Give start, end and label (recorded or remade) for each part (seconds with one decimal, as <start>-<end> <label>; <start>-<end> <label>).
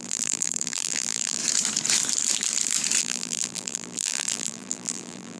0.0-1.4 remade; 1.4-3.0 recorded; 3.0-5.4 remade